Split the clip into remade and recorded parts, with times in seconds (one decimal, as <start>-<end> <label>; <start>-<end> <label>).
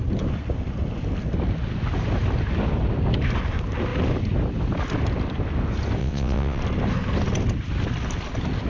0.0-6.0 recorded; 6.0-6.6 remade; 6.6-8.7 recorded